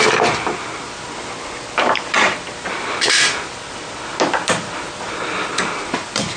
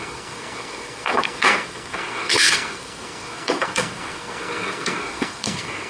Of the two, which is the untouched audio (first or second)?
first